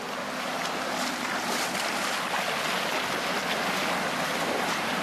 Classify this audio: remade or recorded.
recorded